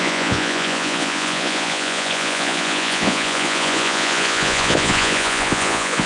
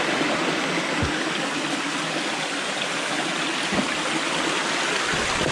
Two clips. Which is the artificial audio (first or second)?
first